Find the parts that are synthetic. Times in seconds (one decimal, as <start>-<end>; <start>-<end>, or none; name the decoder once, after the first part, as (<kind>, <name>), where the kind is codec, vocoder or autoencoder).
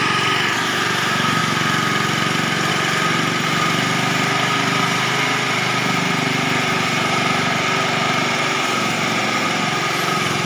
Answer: 0.0-1.4 (vocoder, BigVGAN v2); 2.7-10.5